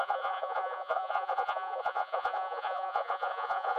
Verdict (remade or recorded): remade